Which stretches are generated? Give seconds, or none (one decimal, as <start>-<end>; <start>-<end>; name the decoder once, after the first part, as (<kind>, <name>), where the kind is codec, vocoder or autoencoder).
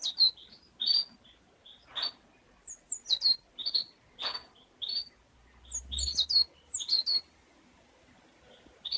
none